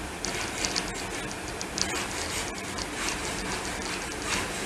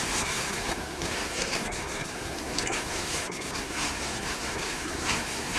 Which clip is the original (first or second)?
first